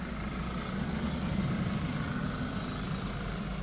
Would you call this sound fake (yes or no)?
no